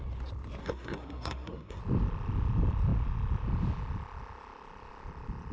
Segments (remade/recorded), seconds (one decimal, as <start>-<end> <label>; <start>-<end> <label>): 0.0-0.6 recorded; 0.6-1.8 remade; 1.8-5.5 recorded